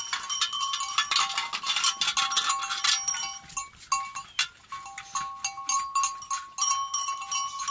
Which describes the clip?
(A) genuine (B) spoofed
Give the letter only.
A